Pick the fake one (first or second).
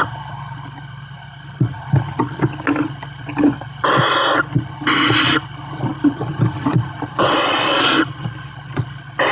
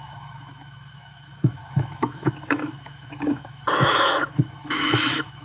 second